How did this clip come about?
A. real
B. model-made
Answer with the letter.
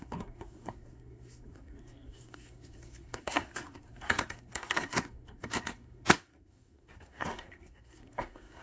B